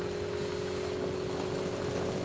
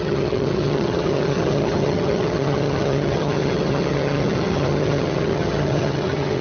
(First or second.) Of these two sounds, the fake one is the second